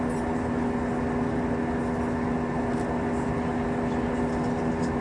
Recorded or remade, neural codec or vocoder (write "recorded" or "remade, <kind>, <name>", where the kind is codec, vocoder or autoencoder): recorded